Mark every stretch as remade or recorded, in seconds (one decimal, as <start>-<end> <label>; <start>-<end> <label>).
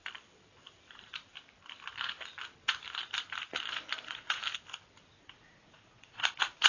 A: 0.0-4.0 recorded; 4.0-4.4 remade; 4.4-5.1 recorded; 5.1-6.7 remade